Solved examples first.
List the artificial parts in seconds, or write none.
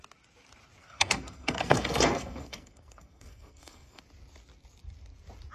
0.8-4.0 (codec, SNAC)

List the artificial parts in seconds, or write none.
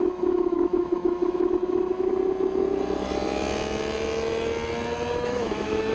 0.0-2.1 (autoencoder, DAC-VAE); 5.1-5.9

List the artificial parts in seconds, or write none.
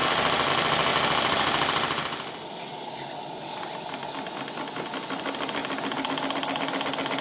none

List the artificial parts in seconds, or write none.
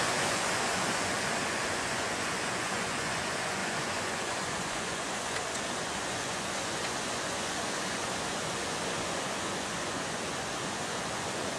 0.0-11.6 (vocoder, Vocos)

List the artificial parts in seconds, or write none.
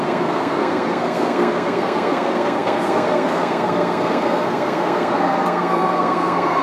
0.0-6.6 (codec, SNAC)